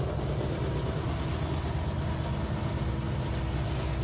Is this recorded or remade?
recorded